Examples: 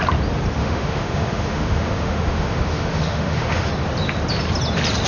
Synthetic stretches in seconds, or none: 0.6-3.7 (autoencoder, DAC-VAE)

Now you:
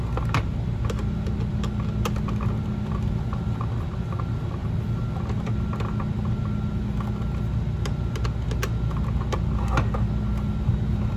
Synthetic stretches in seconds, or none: none

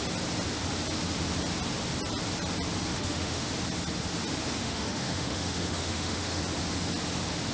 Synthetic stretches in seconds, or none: 2.9-3.5 (autoencoder, DAC-VAE); 4.6-6.4

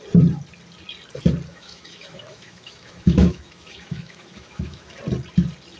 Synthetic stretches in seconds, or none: 1.5-5.0 (autoencoder, DAC-VAE)

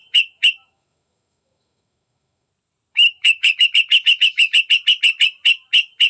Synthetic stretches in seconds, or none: 0.0-2.5 (autoencoder, DAC-VAE); 2.9-4.7

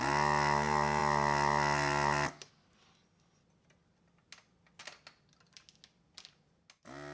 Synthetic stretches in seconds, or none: none

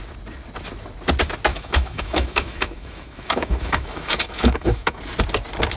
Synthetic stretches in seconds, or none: 1.5-5.0 (autoencoder, DAC-VAE)

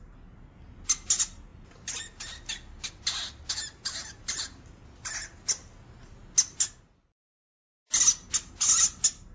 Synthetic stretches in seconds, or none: none